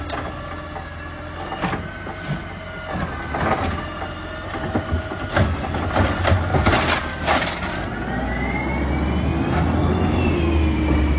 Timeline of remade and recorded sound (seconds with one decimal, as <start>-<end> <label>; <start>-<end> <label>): 0.0-11.2 recorded